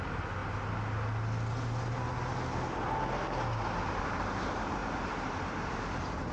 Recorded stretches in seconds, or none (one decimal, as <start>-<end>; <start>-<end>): 0.4-4.0